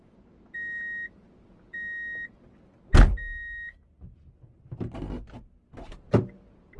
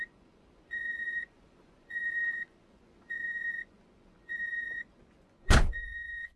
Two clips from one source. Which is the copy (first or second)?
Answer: second